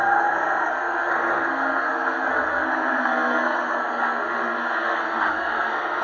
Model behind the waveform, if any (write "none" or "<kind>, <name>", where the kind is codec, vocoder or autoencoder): codec, SNAC